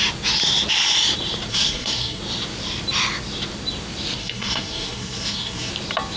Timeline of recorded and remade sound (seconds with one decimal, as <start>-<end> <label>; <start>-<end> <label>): 0.0-1.5 recorded; 1.5-2.2 remade; 2.2-4.2 recorded; 4.2-5.7 remade; 5.7-6.2 recorded